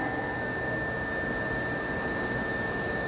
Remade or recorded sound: recorded